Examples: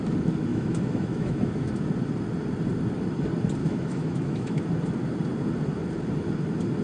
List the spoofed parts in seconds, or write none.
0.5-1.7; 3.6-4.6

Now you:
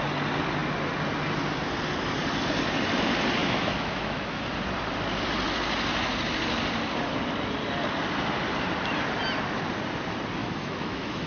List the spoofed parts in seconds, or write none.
3.4-4.4; 10.4-11.3

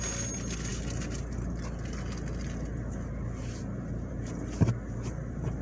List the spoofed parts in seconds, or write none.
none

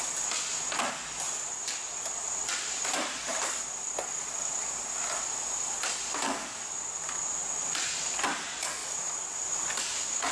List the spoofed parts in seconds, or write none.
none

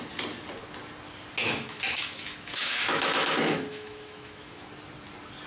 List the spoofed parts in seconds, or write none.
1.4-4.7

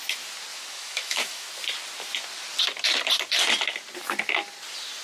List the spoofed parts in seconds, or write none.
0.5-1.5